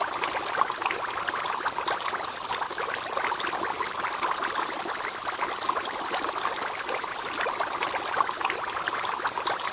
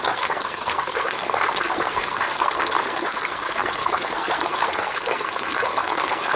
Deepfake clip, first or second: second